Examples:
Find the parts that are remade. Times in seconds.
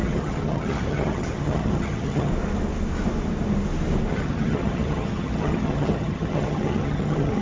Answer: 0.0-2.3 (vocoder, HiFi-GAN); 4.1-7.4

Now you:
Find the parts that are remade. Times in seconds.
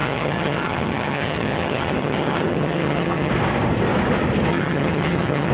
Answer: 0.0-3.3 (vocoder, HiFi-GAN); 4.5-5.5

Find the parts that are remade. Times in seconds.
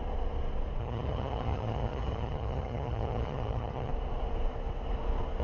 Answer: 0.8-3.9 (vocoder, HiFi-GAN)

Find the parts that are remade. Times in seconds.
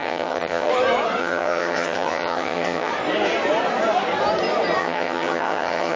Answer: 0.0-0.7 (vocoder, HiFi-GAN); 1.2-2.9; 4.8-6.0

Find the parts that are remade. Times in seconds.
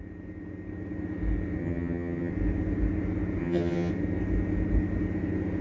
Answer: 1.6-2.3 (vocoder, HiFi-GAN); 3.4-3.9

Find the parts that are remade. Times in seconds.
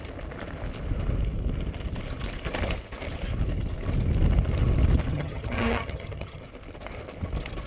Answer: 5.1-6.4 (vocoder, HiFi-GAN)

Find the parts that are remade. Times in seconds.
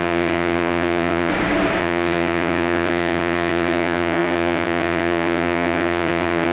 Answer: 0.0-1.3 (vocoder, HiFi-GAN); 1.8-6.5